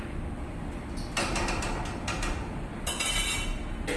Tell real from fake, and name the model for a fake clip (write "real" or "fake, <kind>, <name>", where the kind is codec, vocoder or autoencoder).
real